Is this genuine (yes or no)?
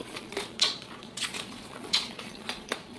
no